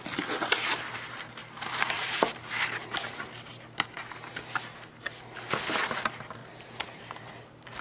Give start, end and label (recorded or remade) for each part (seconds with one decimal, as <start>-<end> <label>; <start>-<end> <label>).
0.0-1.4 recorded; 1.4-2.3 remade; 2.3-6.4 recorded; 6.4-7.8 remade